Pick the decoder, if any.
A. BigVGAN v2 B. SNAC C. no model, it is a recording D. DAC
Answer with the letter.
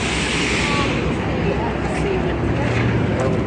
C